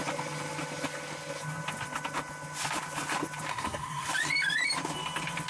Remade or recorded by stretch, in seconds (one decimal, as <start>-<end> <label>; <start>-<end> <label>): 0.0-3.5 recorded; 3.5-4.1 remade; 4.1-5.5 recorded

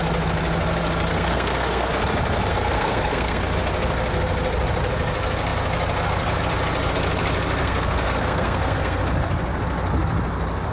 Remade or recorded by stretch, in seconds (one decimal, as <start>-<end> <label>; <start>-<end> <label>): 0.0-1.1 recorded; 1.1-1.9 remade; 1.9-2.5 recorded; 2.5-3.4 remade; 3.4-7.6 recorded; 7.6-9.0 remade; 9.0-10.7 recorded

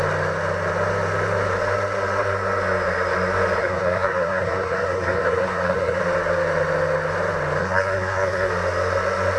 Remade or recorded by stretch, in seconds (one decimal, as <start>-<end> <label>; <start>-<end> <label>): 0.0-3.6 recorded; 3.6-6.0 remade; 6.0-7.6 recorded; 7.6-8.5 remade; 8.5-9.4 recorded

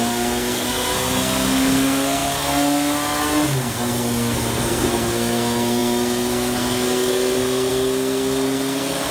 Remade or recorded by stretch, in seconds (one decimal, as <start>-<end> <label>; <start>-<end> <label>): 0.0-9.1 remade

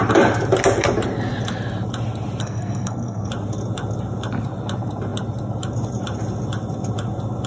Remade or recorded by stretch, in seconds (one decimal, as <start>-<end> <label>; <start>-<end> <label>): 0.0-2.4 recorded; 2.4-3.3 remade; 3.3-7.5 recorded

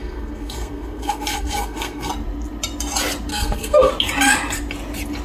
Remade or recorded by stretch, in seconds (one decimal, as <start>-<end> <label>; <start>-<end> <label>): 0.0-2.1 remade; 2.1-3.3 recorded; 3.3-3.9 remade; 3.9-5.2 recorded

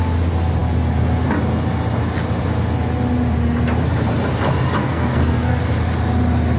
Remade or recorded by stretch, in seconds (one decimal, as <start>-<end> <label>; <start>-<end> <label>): 0.0-4.8 recorded; 4.8-5.6 remade; 5.6-6.6 recorded

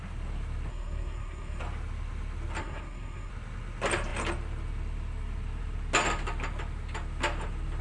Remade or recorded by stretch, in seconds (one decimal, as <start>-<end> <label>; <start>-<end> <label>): 0.0-0.7 recorded; 0.7-1.6 remade; 1.6-2.6 recorded; 2.6-3.3 remade; 3.3-7.8 recorded